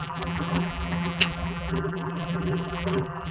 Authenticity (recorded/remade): remade